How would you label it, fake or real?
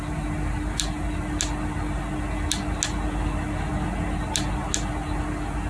real